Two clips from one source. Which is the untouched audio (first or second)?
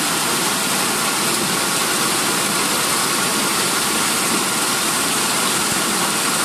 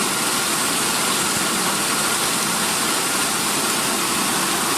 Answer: second